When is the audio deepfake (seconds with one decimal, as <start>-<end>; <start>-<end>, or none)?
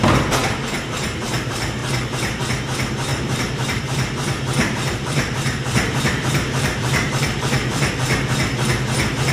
0.4-1.4; 3.1-7.9